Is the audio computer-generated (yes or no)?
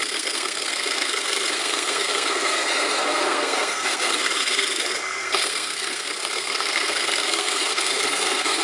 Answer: yes